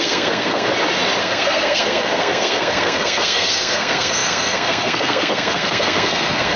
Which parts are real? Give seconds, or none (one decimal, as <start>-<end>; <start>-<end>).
0.7-1.2